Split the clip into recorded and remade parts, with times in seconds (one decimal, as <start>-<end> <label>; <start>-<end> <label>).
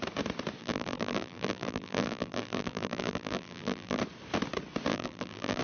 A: 0.0-0.6 recorded; 0.6-4.0 remade; 4.0-4.9 recorded; 4.9-5.6 remade